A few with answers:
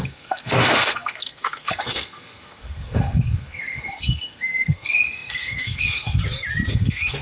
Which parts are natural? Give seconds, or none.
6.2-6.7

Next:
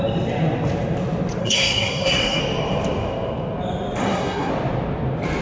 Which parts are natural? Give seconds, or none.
0.0-1.4; 2.4-4.0; 4.5-5.4

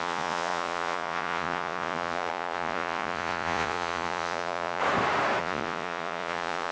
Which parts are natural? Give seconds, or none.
4.8-5.4

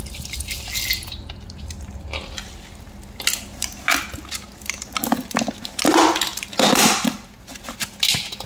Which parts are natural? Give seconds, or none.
0.0-8.5

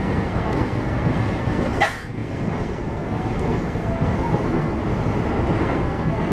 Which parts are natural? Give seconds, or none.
4.8-5.6

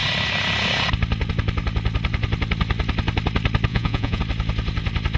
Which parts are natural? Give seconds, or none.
0.0-3.7; 4.2-5.2